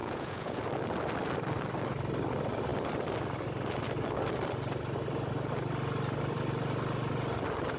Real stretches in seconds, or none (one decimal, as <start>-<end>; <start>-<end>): 0.6-7.8